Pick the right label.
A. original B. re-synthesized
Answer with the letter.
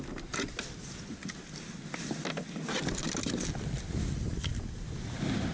A